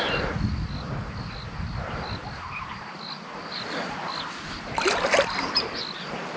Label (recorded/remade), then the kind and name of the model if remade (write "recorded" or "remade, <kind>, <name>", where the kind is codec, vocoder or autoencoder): recorded